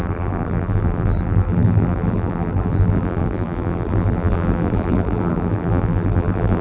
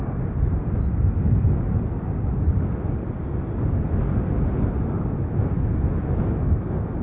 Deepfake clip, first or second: first